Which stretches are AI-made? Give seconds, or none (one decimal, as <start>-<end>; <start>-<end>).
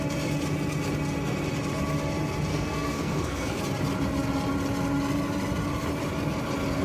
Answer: 2.5-3.6